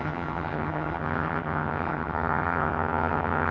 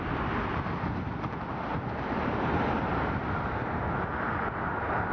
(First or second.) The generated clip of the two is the first